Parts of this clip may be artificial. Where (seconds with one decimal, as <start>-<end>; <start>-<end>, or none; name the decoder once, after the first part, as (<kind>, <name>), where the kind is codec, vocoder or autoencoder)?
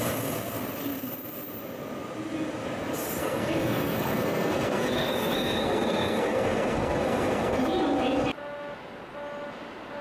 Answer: 3.2-7.6 (codec, SNAC)